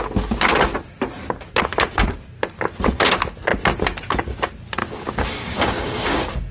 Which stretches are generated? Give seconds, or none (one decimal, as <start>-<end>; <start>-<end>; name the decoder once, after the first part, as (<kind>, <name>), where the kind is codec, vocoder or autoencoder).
4.8-6.5 (codec, DAC)